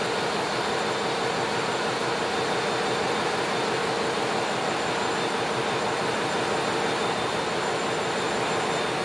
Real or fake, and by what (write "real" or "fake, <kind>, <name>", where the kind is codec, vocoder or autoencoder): real